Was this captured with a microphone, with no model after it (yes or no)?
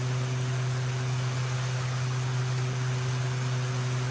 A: yes